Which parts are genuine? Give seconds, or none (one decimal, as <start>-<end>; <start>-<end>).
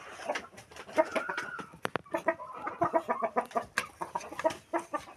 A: 0.0-5.2